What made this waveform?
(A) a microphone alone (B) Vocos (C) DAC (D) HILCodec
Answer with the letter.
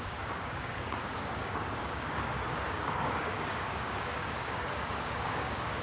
C